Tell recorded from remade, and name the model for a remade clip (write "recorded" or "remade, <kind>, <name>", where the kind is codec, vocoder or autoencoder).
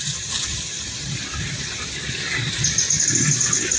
recorded